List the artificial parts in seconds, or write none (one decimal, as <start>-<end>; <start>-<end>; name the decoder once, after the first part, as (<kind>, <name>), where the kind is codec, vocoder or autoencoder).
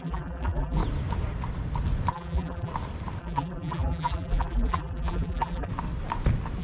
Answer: 0.0-0.8 (vocoder, BigVGAN v2); 2.1-2.7; 3.2-5.7